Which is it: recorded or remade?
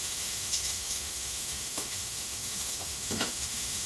remade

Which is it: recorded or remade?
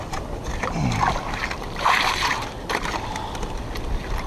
recorded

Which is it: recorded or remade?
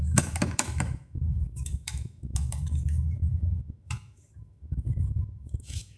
remade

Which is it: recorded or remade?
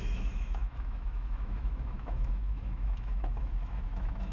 remade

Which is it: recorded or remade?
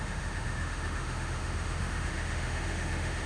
remade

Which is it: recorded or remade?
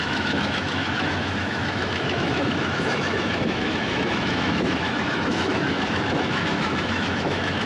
remade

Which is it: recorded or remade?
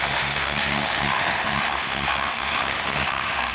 remade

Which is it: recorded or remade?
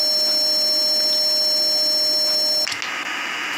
recorded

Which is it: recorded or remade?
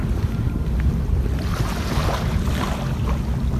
recorded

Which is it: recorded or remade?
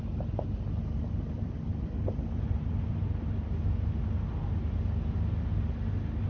recorded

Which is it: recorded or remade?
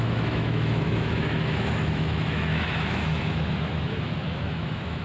remade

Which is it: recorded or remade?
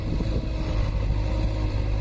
recorded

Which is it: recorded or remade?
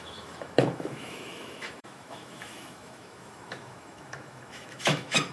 remade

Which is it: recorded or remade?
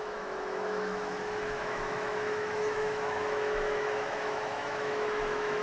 remade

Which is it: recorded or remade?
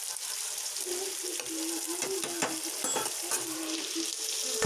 recorded